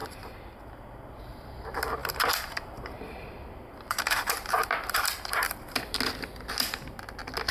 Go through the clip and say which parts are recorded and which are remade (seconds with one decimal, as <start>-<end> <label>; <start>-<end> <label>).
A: 0.0-0.6 remade; 0.6-2.0 recorded; 2.0-5.5 remade; 5.5-7.5 recorded